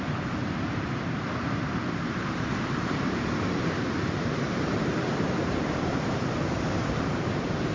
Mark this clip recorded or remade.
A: remade